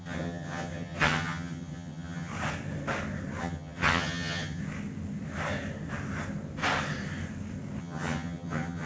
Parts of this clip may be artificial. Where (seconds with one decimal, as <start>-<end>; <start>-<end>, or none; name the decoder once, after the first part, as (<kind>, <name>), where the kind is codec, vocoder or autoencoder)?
0.0-2.3 (vocoder, HiFi-GAN); 3.4-4.6; 7.8-8.9